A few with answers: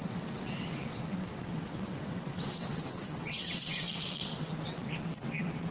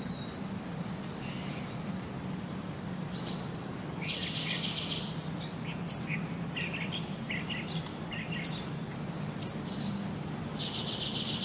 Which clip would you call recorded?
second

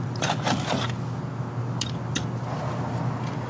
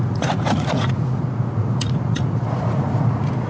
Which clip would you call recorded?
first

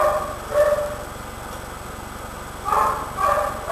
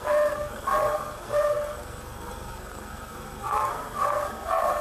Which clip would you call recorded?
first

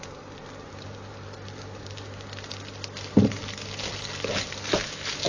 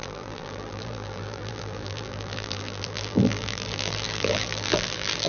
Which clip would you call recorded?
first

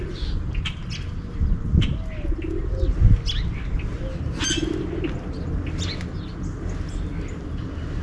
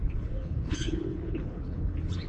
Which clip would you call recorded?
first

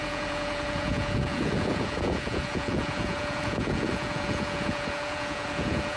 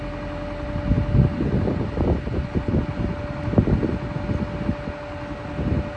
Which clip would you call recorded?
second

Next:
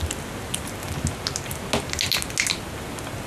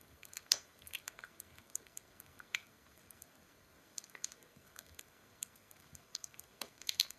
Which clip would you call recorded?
first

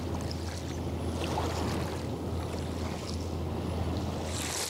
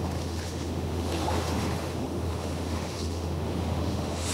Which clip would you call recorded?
first